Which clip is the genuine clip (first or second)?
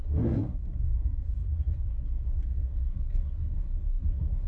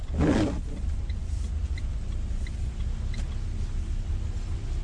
second